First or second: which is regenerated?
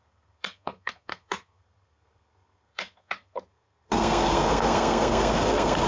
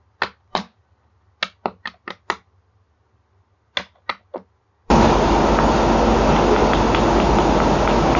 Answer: first